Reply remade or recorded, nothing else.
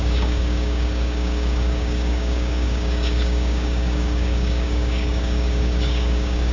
remade